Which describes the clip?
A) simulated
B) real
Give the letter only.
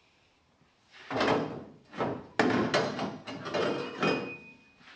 B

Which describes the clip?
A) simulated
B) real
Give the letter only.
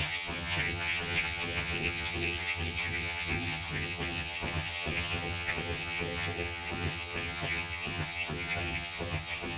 A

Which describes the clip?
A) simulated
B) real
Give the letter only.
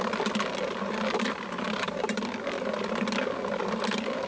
B